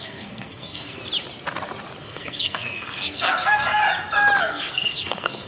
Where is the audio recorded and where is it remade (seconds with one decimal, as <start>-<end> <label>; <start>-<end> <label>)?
0.0-1.0 remade; 1.0-2.0 recorded; 2.0-3.8 remade; 3.8-4.4 recorded; 4.4-5.5 remade